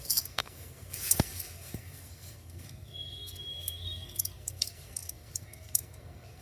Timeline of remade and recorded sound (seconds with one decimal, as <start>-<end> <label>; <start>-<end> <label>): 0.0-6.4 remade